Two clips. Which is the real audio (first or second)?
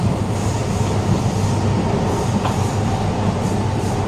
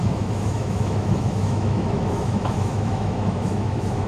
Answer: first